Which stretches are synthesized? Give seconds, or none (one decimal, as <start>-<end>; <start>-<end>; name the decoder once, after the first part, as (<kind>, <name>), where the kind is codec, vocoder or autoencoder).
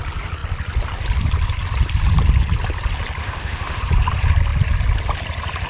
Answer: 3.2-3.8 (autoencoder, DAC-VAE)